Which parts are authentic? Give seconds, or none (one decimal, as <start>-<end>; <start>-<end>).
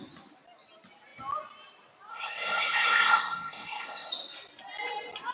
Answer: 0.0-2.1; 4.1-5.3